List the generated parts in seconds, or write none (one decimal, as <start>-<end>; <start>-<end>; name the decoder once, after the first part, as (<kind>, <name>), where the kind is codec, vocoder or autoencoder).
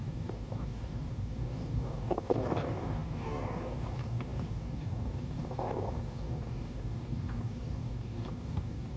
0.0-9.0 (codec, DAC)